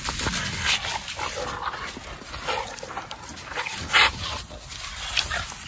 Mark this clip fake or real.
real